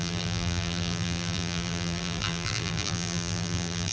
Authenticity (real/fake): fake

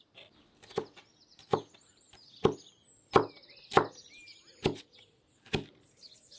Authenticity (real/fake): real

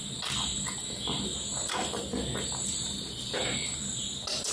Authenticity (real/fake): real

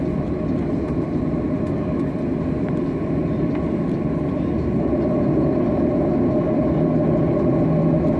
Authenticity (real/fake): real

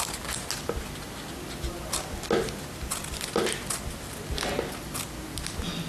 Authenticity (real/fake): real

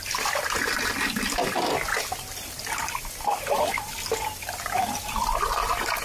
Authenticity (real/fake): fake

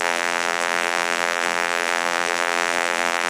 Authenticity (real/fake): fake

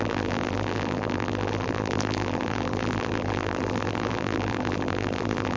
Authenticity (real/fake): fake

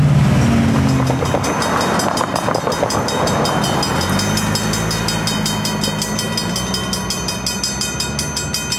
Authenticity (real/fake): real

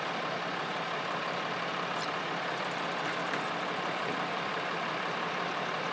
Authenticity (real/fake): fake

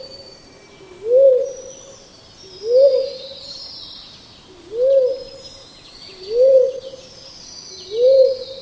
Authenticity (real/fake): real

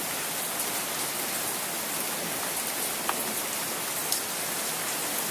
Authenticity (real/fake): real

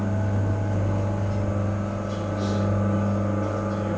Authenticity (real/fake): real